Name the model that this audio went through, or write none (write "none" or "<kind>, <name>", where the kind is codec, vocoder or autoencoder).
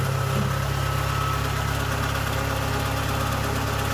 none